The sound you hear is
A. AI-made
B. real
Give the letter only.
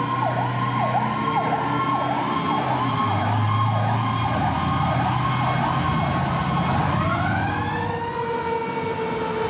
B